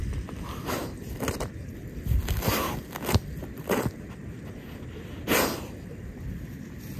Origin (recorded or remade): recorded